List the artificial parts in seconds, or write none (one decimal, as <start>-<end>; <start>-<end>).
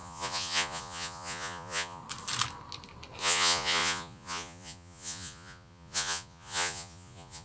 0.0-2.0; 3.2-7.4